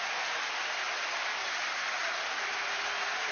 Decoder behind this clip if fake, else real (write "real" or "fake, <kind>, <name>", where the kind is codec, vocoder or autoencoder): real